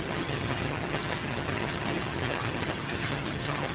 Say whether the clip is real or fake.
fake